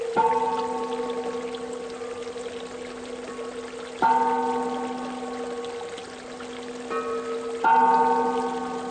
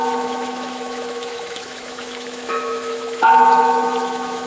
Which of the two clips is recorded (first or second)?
first